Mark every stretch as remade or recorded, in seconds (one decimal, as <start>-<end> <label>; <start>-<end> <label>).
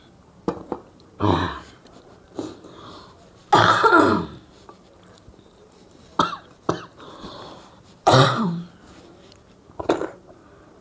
0.0-3.4 remade; 3.4-4.0 recorded; 4.0-6.1 remade; 6.1-7.5 recorded; 7.5-10.8 remade